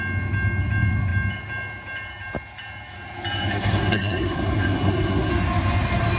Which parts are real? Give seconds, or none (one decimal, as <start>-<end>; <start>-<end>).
0.0-3.5; 5.3-6.2